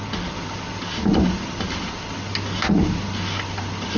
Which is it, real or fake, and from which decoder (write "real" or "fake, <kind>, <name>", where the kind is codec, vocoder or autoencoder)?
real